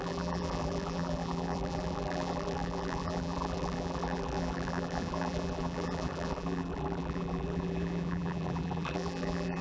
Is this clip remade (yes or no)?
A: yes